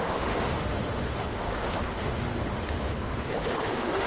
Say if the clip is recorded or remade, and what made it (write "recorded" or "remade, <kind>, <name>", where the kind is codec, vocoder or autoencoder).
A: remade, autoencoder, DAC-VAE